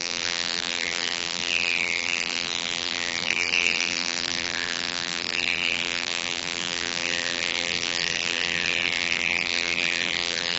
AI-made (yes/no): yes